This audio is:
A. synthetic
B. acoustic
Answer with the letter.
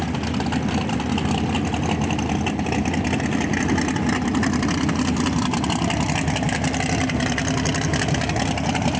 B